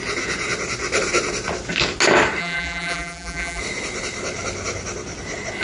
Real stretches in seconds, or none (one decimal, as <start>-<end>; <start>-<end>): 0.0-2.4; 3.6-5.6